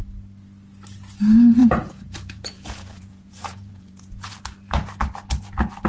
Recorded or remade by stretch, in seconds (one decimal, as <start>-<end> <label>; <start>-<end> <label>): 0.0-1.6 recorded; 1.6-4.3 remade; 4.3-5.9 recorded